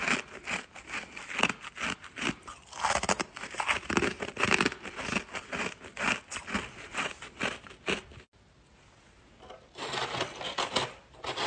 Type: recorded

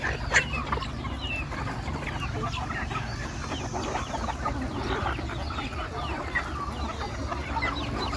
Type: recorded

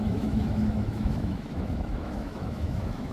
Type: remade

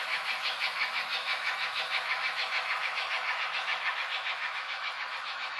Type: remade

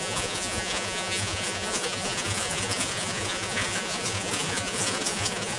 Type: remade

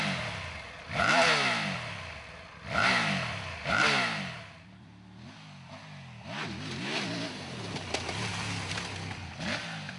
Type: recorded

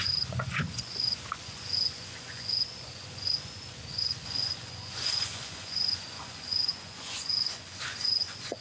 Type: remade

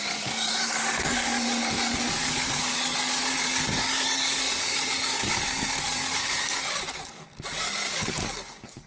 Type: remade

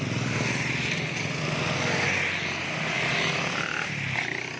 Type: recorded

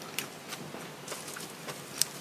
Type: recorded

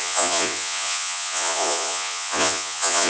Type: remade